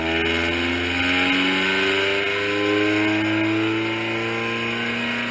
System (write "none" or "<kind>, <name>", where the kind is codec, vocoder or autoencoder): none